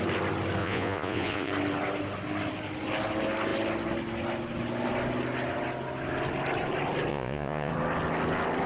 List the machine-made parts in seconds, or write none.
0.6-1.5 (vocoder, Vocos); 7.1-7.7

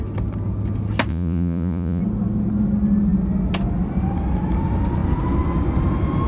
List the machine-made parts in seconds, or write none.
1.1-2.0 (vocoder, Vocos)

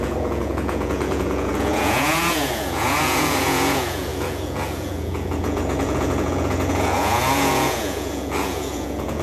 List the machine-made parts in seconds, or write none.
0.0-9.2 (vocoder, Vocos)

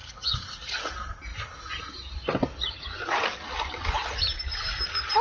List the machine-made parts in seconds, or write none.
0.0-0.9 (vocoder, Vocos)